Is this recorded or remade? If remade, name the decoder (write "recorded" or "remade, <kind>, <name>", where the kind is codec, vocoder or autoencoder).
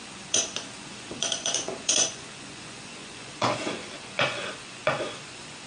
remade, vocoder, Vocos